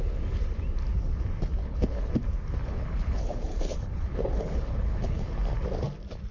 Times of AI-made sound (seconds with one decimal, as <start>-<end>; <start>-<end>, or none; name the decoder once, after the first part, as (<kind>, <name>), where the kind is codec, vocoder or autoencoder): 1.6-2.1 (codec, HILCodec); 2.6-5.4